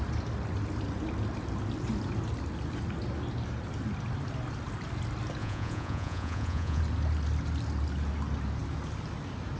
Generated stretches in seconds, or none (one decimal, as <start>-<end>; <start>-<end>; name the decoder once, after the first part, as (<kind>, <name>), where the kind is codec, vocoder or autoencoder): 5.4-6.8 (vocoder, Vocos)